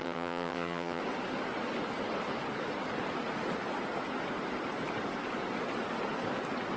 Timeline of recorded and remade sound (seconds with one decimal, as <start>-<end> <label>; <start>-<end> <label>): 0.0-1.0 remade; 1.0-6.8 recorded